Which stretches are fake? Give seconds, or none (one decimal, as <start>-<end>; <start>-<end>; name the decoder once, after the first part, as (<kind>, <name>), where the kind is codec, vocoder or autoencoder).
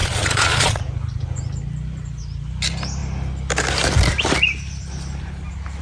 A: 0.0-0.8 (vocoder, Vocos)